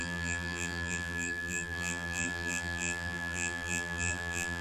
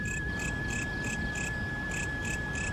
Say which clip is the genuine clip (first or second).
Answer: second